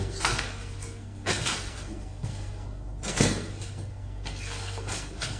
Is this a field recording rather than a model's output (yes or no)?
no